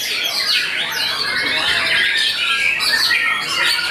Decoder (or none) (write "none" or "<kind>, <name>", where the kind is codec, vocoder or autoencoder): none